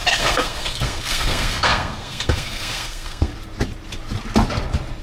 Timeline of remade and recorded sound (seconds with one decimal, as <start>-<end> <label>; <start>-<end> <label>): 0.0-3.3 remade; 3.3-5.0 recorded